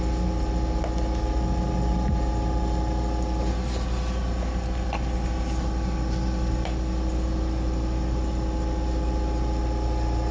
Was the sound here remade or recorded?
recorded